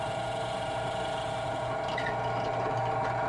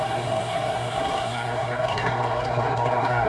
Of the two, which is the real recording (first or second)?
first